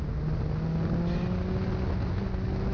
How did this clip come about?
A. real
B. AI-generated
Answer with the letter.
A